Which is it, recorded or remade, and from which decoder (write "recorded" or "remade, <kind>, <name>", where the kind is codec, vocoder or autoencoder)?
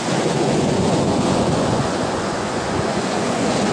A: remade, vocoder, Vocos